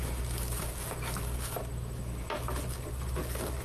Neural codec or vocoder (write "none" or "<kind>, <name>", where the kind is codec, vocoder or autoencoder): none